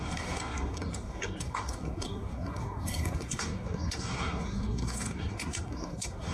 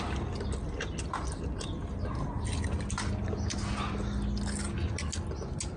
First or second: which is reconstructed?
first